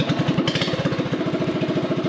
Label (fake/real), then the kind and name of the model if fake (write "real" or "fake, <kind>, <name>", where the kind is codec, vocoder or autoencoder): real